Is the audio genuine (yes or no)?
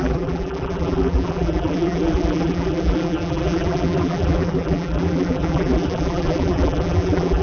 no